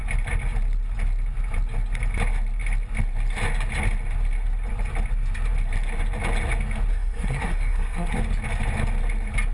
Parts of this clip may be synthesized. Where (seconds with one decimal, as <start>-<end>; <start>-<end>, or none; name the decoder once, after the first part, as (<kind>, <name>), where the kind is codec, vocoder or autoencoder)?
6.9-8.2 (codec, SNAC)